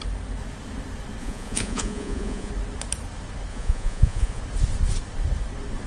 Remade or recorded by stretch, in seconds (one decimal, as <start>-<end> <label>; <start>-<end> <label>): 0.0-1.2 recorded; 1.2-2.5 remade; 2.5-3.5 recorded; 3.5-4.4 remade; 4.4-5.9 recorded